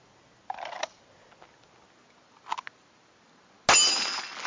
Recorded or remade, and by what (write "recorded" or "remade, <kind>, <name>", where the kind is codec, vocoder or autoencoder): recorded